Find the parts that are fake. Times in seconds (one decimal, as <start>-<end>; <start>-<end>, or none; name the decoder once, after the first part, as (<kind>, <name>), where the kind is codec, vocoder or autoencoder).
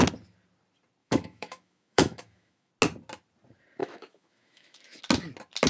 1.0-2.7 (autoencoder, DAC-VAE); 3.8-5.0